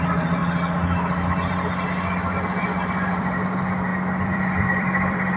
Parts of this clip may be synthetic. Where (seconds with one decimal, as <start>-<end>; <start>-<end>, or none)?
0.0-0.4; 3.1-5.4